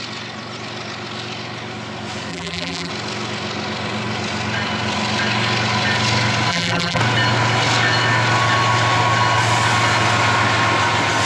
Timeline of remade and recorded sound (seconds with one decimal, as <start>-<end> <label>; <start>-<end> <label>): 0.0-2.3 recorded; 2.3-2.9 remade; 2.9-6.5 recorded; 6.5-7.0 remade; 7.0-11.3 recorded